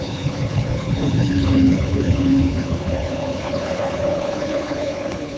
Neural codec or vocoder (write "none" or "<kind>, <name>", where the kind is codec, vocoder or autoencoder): codec, HILCodec